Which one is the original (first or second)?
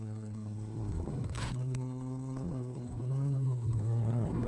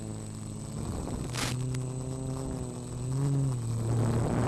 second